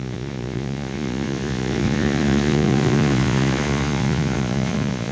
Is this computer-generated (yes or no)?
yes